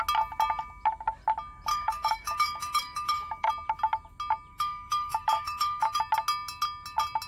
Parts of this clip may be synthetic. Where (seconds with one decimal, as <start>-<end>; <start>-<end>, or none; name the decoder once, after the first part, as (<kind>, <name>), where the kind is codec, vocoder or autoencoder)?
1.7-3.5 (autoencoder, DAC-VAE); 4.5-6.0